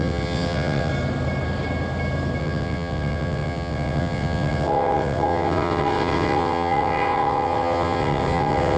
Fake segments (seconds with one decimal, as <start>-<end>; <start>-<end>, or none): 0.0-0.9; 2.4-8.8